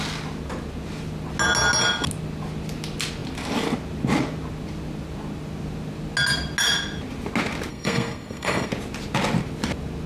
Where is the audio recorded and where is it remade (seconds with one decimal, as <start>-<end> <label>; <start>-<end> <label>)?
0.0-7.7 recorded; 7.7-8.7 remade; 8.7-10.1 recorded